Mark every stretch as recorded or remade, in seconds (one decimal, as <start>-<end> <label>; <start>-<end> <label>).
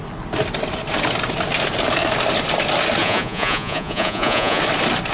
0.0-3.0 recorded; 3.0-4.6 remade; 4.6-5.1 recorded